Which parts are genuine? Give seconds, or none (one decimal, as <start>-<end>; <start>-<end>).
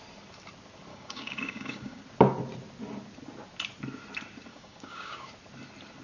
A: 0.0-0.9; 2.0-4.5; 5.3-6.0